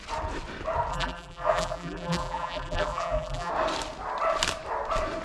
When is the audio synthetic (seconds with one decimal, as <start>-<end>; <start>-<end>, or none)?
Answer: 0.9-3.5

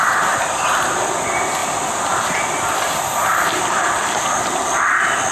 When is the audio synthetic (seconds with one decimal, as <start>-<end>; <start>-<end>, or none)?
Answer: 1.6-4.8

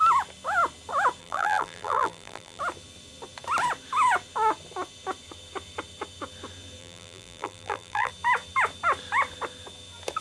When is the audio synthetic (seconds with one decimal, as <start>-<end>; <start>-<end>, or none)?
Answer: 1.2-2.6; 6.8-8.1